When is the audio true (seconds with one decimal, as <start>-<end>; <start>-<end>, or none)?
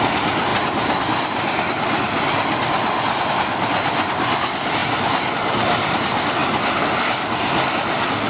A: 0.0-8.3